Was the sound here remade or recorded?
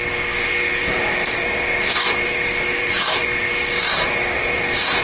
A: remade